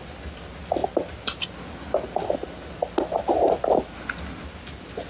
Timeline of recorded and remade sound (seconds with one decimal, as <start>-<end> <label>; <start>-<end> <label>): 0.0-5.1 recorded